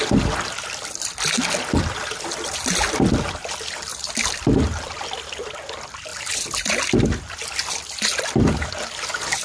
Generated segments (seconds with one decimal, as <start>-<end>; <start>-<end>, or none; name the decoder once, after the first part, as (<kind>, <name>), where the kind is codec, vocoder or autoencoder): 6.1-6.7 (vocoder, BigVGAN v2)